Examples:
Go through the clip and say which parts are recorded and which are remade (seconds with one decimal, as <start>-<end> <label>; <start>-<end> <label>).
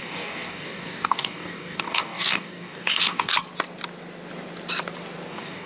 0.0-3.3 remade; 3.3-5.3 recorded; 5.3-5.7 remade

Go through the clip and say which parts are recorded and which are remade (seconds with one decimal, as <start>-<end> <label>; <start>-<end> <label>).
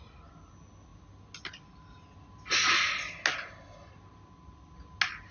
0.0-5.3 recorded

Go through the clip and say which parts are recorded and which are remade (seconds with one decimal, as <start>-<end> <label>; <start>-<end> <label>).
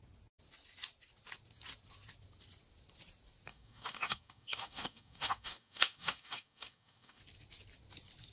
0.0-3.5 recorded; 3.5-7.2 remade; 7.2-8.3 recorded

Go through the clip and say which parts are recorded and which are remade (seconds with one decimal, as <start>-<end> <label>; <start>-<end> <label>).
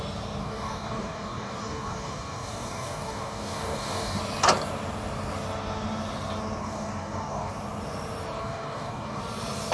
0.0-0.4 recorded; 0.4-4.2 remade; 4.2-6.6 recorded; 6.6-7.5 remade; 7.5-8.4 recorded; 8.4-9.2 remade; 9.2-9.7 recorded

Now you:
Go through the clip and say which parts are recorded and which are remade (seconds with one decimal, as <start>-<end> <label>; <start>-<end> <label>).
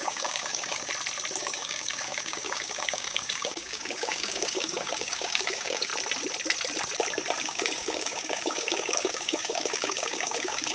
0.0-0.9 remade; 0.9-1.4 recorded; 1.4-5.9 remade; 5.9-7.4 recorded; 7.4-10.7 remade